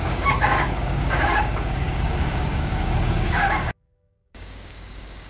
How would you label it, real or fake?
fake